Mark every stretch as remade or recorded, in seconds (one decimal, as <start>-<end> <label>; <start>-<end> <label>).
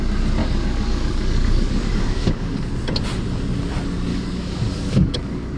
0.0-0.4 recorded; 0.4-2.7 remade; 2.7-4.1 recorded; 4.1-5.6 remade